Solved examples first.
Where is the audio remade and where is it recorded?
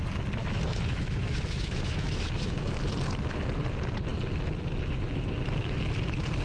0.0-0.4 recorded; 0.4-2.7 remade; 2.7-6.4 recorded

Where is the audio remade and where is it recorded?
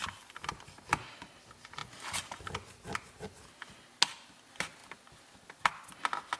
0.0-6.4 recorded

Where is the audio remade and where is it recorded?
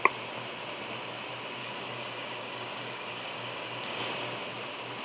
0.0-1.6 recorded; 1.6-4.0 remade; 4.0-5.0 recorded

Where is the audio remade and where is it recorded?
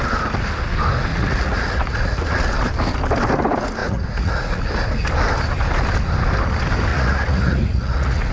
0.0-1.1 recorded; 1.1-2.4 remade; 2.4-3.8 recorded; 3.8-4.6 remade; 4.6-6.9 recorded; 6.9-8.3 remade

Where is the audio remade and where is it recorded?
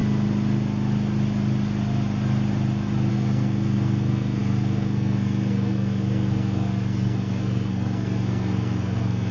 0.0-3.1 recorded; 3.1-9.3 remade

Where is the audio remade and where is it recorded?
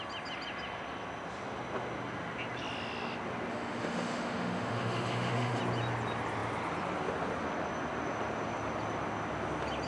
0.0-3.5 recorded; 3.5-5.6 remade; 5.6-9.9 recorded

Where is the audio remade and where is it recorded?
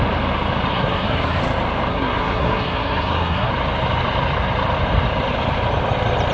0.0-0.7 recorded; 0.7-1.4 remade; 1.4-1.9 recorded; 1.9-3.5 remade; 3.5-6.3 recorded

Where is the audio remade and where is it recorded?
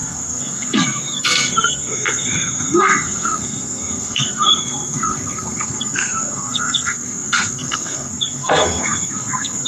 0.0-9.7 remade